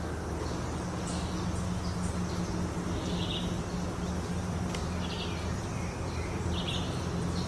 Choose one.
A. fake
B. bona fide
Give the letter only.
B